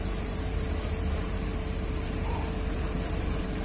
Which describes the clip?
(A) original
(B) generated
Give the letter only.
B